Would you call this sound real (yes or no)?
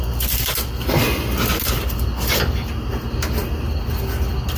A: yes